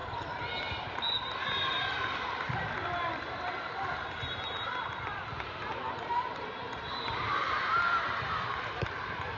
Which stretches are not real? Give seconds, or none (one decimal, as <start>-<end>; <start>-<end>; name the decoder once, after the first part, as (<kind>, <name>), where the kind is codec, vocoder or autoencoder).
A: 0.0-9.4 (vocoder, BigVGAN v2)